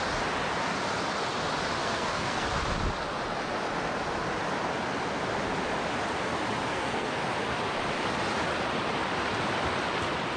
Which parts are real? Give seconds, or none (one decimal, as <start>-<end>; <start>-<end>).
0.0-1.8; 2.5-6.7; 7.2-10.4